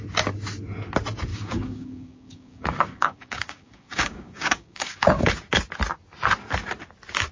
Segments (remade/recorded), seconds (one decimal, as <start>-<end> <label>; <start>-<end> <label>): 0.0-1.3 recorded; 1.3-5.2 remade; 5.2-7.3 recorded